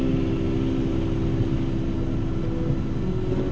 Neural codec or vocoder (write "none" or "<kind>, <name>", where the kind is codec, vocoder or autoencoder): none